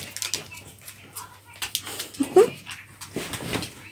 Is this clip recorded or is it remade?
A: recorded